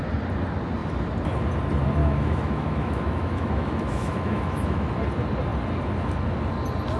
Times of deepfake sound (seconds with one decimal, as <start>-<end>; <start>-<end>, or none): 2.0-4.9